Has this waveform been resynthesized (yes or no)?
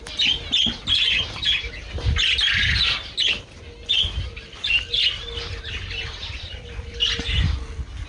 no